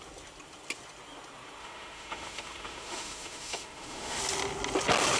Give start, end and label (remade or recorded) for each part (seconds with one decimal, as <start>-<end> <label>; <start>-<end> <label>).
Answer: 0.0-1.6 recorded; 1.6-4.2 remade; 4.2-5.2 recorded